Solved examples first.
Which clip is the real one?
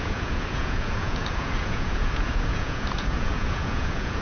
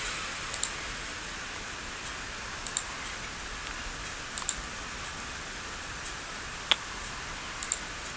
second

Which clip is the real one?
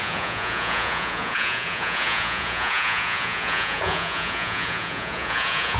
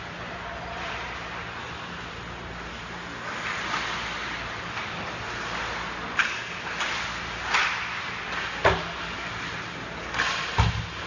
second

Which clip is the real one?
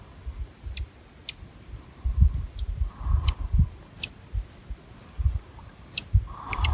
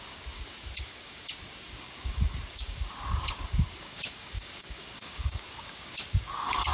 first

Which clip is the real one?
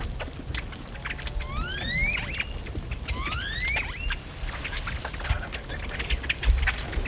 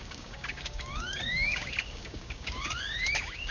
first